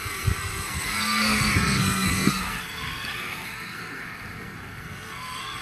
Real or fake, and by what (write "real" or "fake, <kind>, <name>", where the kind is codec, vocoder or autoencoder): fake, codec, SNAC